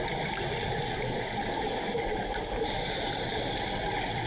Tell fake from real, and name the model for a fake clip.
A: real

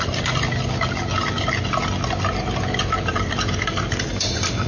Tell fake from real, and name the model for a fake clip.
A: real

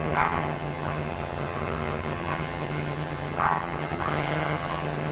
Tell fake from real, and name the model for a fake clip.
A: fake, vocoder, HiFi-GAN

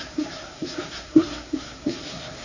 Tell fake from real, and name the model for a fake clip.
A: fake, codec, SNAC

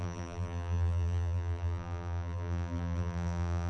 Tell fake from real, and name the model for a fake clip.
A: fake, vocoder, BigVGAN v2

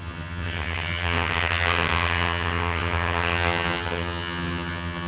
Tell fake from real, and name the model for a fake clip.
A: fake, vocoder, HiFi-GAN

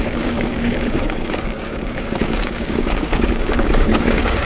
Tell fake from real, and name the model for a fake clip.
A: fake, codec, DAC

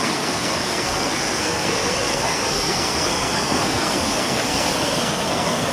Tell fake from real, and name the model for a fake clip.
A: fake, codec, SNAC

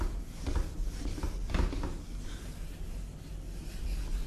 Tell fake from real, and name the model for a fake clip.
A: real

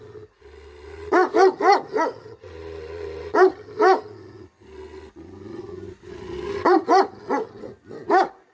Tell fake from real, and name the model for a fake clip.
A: real